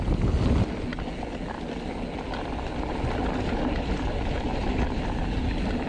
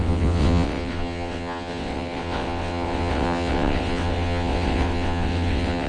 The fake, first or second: second